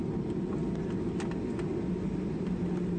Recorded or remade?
recorded